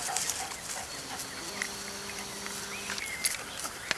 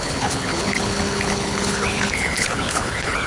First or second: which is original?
first